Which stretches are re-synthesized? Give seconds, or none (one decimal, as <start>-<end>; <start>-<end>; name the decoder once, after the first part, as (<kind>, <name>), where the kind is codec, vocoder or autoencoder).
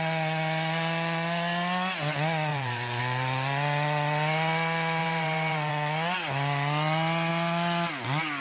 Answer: 2.5-3.0 (vocoder, BigVGAN v2); 5.0-5.7